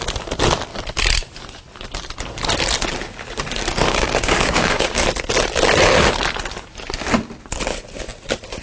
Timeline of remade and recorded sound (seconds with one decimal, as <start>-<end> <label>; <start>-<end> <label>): 0.0-3.9 recorded; 3.9-5.0 remade; 5.0-8.6 recorded